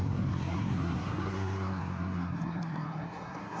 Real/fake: fake